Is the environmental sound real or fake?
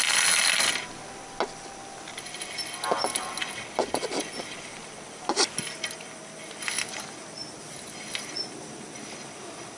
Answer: real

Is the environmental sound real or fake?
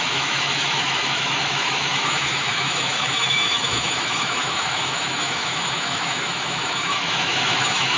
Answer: fake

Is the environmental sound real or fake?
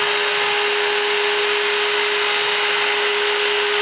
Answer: real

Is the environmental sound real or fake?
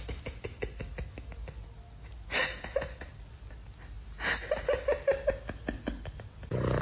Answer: real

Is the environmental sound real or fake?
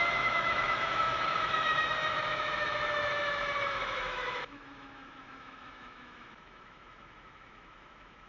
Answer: fake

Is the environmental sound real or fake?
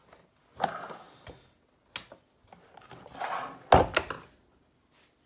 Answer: real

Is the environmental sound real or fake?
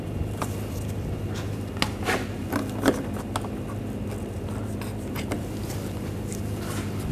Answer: real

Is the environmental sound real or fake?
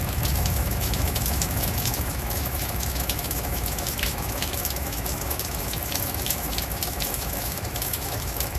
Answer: fake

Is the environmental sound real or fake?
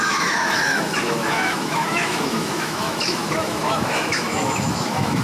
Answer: fake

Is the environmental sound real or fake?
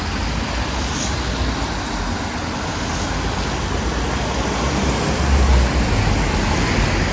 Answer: real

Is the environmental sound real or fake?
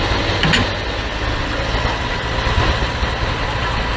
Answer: real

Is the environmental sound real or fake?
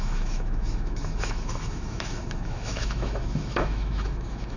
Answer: fake